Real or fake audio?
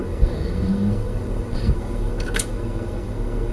fake